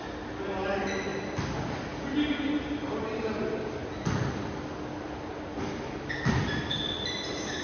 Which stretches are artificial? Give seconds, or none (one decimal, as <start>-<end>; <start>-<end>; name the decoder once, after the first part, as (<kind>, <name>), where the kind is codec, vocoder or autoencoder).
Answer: none